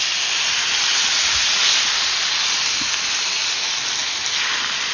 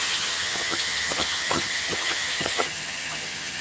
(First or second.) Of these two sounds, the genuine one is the first